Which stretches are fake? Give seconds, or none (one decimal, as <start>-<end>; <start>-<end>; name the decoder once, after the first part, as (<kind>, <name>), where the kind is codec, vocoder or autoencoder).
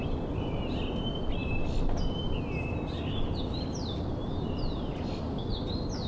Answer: 0.0-1.4 (vocoder, BigVGAN v2); 3.7-6.1